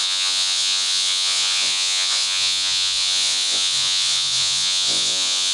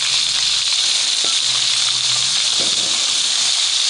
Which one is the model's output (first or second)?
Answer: first